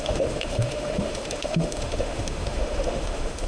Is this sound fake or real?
fake